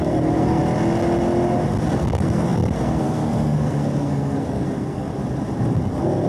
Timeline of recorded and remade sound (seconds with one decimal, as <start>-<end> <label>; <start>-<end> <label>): 0.0-0.6 remade; 0.6-1.9 recorded; 1.9-5.1 remade; 5.1-5.8 recorded; 5.8-6.3 remade